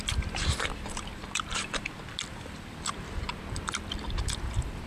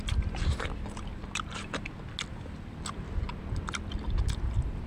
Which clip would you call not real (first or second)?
first